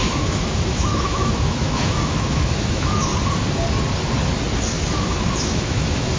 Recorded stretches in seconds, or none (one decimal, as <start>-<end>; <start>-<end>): 3.1-4.9